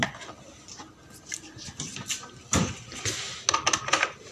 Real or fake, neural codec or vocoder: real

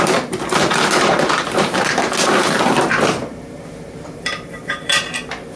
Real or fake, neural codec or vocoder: fake, vocoder, BigVGAN v2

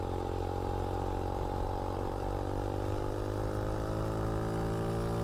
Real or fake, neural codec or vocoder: real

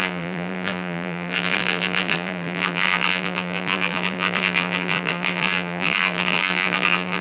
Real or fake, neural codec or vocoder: fake, vocoder, BigVGAN v2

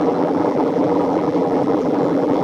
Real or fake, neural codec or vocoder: fake, vocoder, BigVGAN v2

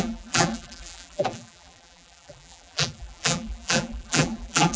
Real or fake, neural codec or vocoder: fake, vocoder, BigVGAN v2